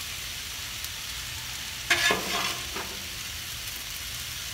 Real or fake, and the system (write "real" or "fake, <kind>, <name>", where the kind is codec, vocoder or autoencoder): real